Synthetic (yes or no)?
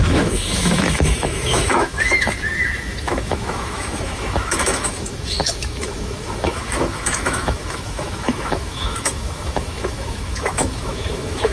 yes